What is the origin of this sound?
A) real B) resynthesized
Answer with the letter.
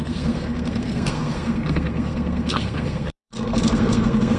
B